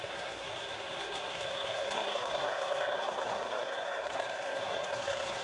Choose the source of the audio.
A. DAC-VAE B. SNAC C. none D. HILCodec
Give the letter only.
B